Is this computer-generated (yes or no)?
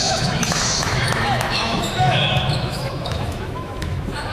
yes